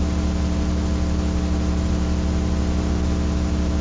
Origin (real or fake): real